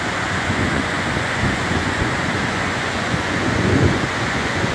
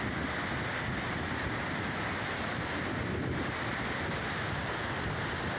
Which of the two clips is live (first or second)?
second